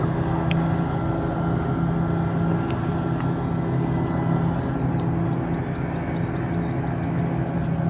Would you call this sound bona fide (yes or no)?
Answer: yes